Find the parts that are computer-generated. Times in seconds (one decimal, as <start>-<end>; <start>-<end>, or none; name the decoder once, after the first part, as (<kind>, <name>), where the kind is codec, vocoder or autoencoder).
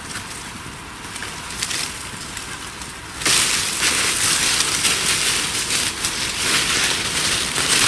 none